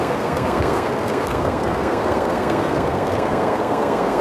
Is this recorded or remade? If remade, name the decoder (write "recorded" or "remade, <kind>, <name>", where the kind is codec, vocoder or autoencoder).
remade, codec, SNAC